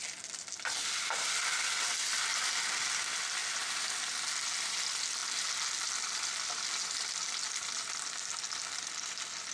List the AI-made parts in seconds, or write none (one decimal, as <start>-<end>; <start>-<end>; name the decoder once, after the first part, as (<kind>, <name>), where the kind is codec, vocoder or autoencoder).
none